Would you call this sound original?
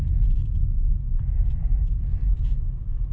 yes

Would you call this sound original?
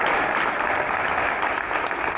yes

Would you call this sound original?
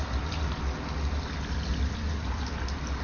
yes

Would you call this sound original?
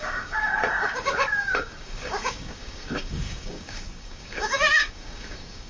no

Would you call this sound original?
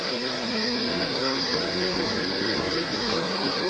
no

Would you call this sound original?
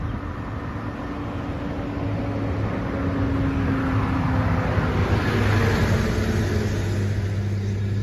yes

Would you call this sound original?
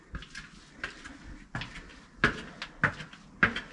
yes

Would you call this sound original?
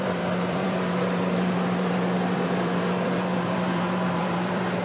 no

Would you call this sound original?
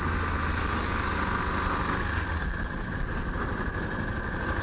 yes